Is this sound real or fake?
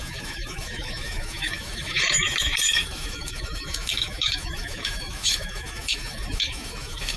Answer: fake